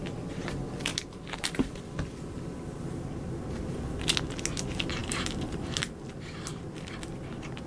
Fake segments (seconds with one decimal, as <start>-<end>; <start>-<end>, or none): 5.0-7.7